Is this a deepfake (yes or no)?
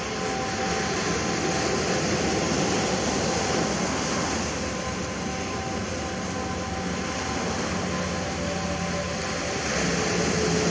no